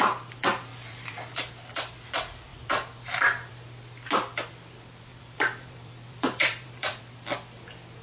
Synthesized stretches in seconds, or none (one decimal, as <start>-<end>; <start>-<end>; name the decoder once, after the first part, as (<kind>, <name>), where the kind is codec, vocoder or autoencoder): 0.7-1.5 (vocoder, BigVGAN v2); 5.1-7.0